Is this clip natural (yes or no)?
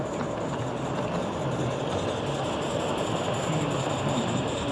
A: yes